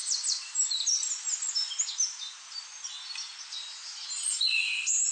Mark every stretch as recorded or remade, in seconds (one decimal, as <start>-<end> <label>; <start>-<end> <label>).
0.0-5.1 recorded